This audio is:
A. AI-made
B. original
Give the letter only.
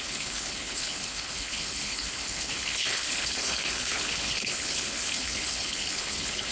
A